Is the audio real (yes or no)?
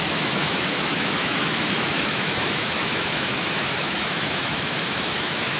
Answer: no